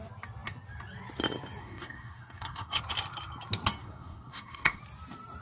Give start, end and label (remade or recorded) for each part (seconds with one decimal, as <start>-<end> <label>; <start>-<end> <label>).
0.0-1.6 recorded; 1.6-2.8 remade; 2.8-3.8 recorded; 3.8-4.8 remade; 4.8-5.4 recorded